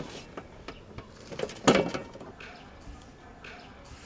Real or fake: real